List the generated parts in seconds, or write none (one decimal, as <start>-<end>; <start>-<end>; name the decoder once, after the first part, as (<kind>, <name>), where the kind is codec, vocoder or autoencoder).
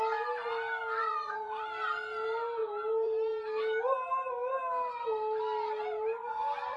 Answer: 1.0-1.6 (vocoder, Vocos)